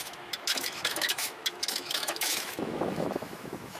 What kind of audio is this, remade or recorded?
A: remade